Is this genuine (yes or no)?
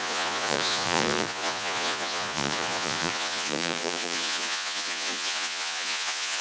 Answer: no